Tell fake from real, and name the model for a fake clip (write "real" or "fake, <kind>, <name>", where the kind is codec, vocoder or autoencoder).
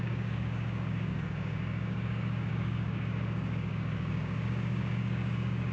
fake, codec, DAC